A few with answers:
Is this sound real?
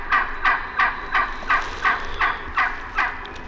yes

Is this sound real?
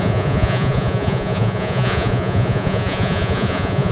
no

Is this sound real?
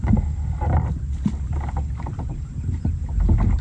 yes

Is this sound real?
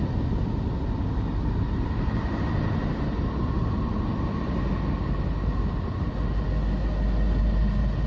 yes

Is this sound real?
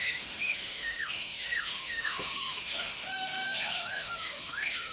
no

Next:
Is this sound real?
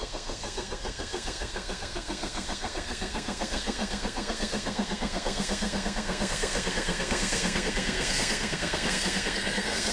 no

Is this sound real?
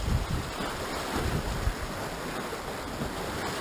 yes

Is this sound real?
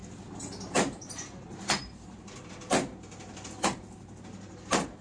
yes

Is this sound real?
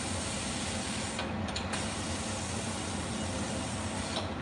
yes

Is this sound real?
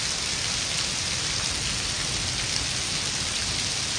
yes